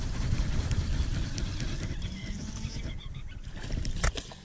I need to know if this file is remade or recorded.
recorded